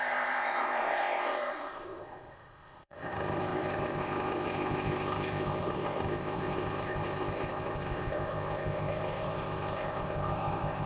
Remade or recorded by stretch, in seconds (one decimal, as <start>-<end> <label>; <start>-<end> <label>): 0.0-10.9 remade